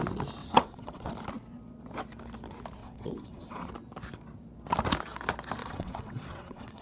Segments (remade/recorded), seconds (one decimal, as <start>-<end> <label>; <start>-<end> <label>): 0.0-0.4 recorded; 0.4-1.1 remade; 1.1-2.8 recorded; 2.8-3.7 remade; 3.7-5.6 recorded; 5.6-6.8 remade